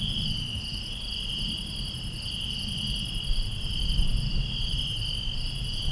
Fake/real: real